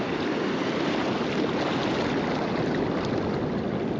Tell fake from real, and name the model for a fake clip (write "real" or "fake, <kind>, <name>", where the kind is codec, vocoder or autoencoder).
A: real